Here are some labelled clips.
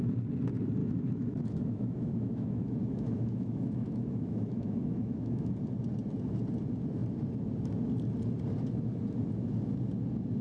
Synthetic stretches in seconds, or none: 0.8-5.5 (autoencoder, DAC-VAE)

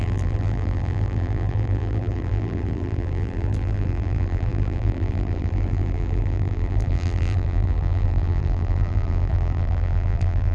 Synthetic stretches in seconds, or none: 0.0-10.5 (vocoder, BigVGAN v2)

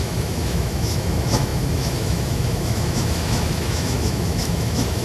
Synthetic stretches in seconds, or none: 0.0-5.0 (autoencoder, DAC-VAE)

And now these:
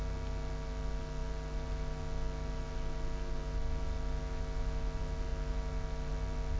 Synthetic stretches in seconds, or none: none